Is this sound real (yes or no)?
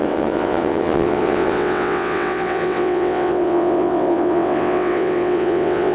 no